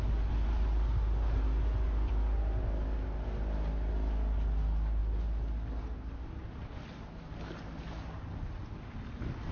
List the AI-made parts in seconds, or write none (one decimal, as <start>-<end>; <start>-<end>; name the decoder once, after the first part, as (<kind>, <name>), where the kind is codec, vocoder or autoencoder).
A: none